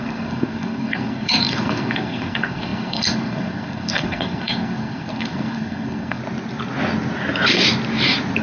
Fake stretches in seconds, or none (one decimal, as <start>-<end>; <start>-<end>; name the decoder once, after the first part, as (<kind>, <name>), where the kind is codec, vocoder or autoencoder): 0.0-6.2 (codec, SNAC)